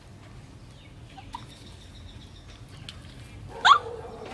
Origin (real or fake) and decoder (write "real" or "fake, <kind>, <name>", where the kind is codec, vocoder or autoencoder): real